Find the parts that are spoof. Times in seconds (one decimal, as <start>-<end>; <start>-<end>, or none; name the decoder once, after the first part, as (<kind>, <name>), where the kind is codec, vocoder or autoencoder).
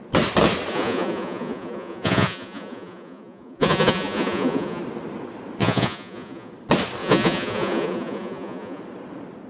0.7-4.8 (vocoder, Vocos); 5.6-6.5; 7.0-8.8